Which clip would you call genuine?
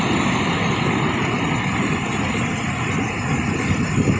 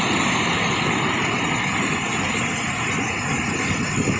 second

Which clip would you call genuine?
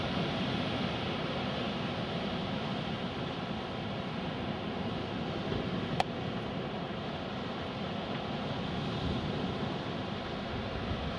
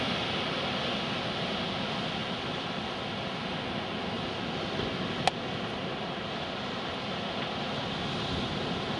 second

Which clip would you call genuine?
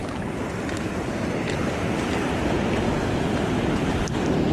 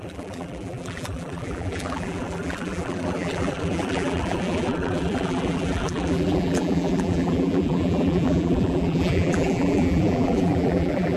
first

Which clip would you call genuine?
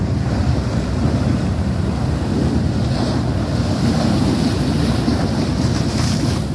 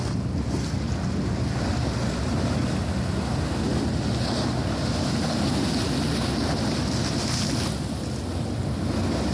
second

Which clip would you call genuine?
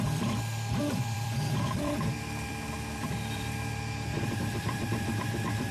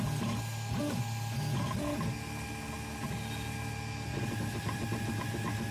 second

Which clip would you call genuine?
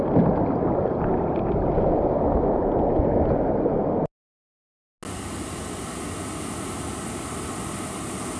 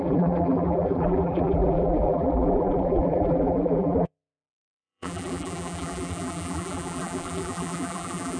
first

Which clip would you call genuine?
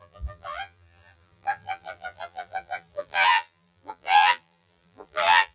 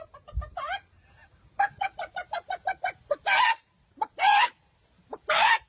second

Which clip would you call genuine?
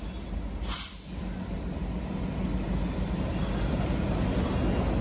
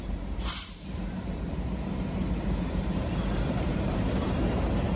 first